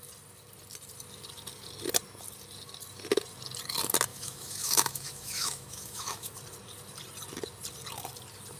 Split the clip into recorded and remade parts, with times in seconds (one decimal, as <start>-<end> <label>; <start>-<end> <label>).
0.0-4.1 recorded; 4.1-6.3 remade; 6.3-8.6 recorded